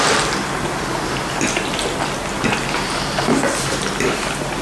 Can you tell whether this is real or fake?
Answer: real